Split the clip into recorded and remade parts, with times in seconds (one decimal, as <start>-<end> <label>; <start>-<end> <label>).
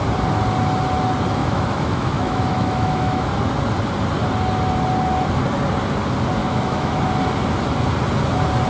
0.0-1.4 recorded; 1.4-3.3 remade; 3.3-6.4 recorded; 6.4-7.0 remade; 7.0-8.7 recorded